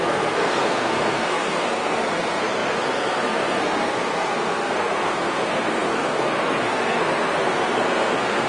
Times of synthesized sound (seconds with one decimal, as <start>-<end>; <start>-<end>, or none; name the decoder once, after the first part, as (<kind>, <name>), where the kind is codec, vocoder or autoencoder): 0.0-8.5 (codec, SNAC)